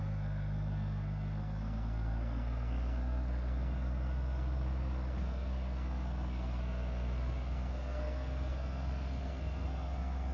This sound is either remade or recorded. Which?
remade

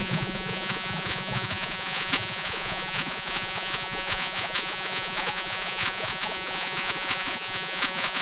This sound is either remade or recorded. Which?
remade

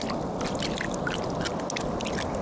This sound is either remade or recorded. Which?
recorded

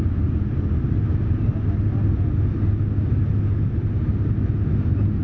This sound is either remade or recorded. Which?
recorded